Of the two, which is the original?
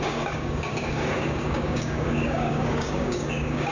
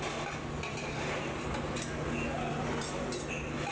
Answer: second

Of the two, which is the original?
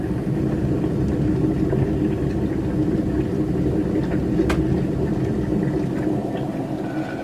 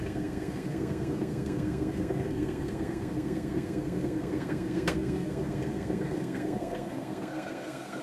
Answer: first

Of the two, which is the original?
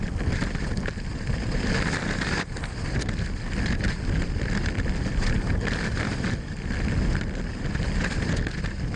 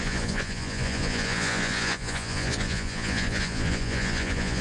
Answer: first